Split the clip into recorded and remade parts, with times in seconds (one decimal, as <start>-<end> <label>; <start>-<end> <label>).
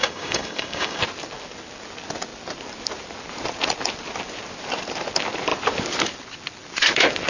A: 0.0-1.0 remade; 1.0-7.3 recorded